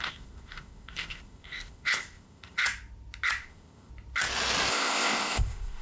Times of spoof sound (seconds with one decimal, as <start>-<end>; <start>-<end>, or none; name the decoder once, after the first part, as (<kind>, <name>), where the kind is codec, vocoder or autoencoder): 0.0-2.6 (codec, ZipCodec); 3.4-3.9; 4.7-5.8